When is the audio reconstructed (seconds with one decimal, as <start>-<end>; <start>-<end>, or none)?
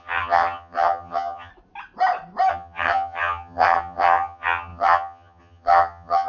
0.0-1.5; 2.5-6.3